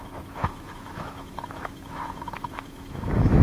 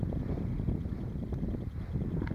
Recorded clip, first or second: second